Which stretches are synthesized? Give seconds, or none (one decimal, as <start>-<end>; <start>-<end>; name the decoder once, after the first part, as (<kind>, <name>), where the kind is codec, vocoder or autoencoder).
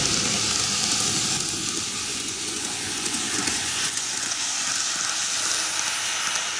2.1-4.5 (vocoder, Vocos)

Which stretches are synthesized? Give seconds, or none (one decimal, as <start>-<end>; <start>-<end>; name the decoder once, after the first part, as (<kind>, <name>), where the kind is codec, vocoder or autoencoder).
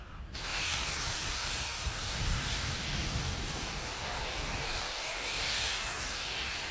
0.0-6.7 (codec, DAC)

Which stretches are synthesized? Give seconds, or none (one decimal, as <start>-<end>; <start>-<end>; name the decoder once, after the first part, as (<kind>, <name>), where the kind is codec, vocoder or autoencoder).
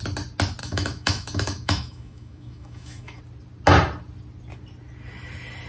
0.6-3.2 (autoencoder, DAC-VAE)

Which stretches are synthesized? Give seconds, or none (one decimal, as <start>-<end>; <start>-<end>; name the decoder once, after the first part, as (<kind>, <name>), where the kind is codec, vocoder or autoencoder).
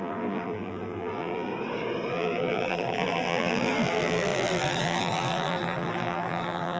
0.0-1.5 (vocoder, BigVGAN v2); 2.1-6.8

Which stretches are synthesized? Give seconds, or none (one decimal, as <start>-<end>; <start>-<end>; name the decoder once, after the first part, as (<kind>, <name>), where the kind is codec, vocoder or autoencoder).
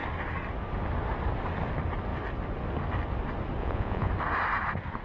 3.6-4.1 (vocoder, Vocos)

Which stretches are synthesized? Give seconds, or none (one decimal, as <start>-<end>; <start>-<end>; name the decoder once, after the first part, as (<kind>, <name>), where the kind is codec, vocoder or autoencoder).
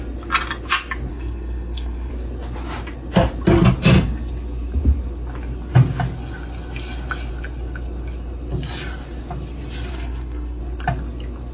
1.1-2.1 (codec, SNAC); 9.9-10.6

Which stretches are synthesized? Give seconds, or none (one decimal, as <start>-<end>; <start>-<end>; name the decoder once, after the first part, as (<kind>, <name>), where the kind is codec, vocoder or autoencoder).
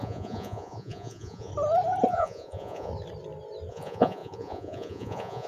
0.0-1.5 (vocoder, Vocos); 2.1-2.9; 3.7-5.5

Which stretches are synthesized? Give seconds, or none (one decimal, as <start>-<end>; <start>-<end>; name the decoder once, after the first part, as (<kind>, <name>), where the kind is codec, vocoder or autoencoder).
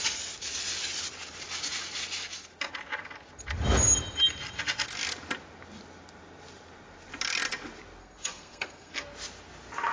8.0-9.0 (codec, SNAC)